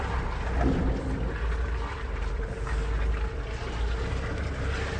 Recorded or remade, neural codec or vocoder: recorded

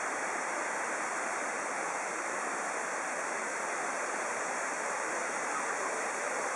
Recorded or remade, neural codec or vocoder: remade, vocoder, BigVGAN v2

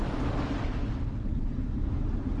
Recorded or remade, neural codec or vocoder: recorded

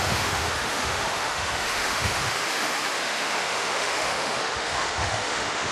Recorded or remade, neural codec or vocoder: remade, autoencoder, DAC-VAE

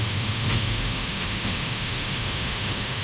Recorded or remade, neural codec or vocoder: remade, autoencoder, DAC-VAE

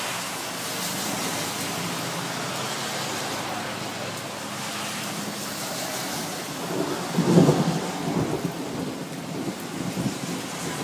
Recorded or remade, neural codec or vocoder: recorded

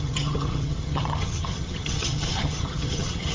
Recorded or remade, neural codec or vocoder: remade, vocoder, HiFi-GAN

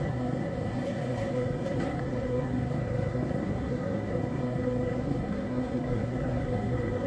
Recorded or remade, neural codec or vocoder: remade, codec, SNAC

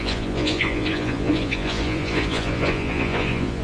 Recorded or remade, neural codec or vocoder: remade, vocoder, Vocos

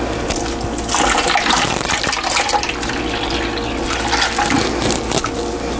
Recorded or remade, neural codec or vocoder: recorded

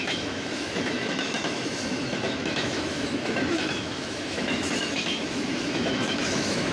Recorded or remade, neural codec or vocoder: remade, autoencoder, DAC-VAE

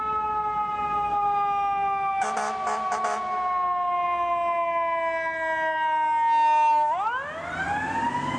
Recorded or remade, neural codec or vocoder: recorded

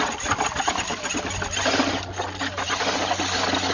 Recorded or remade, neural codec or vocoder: recorded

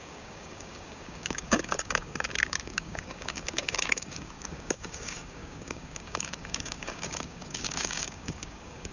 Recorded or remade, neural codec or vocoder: remade, codec, DAC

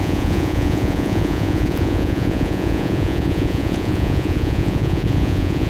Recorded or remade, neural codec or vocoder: remade, vocoder, Vocos